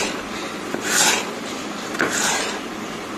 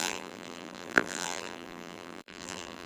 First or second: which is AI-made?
second